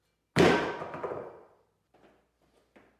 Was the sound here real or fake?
real